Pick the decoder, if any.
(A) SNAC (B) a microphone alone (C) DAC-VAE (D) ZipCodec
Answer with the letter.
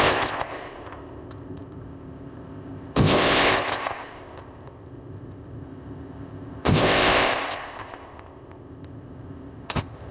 D